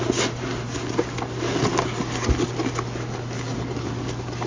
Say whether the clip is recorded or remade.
recorded